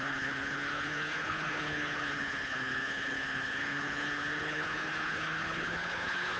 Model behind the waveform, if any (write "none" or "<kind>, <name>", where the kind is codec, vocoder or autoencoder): codec, HILCodec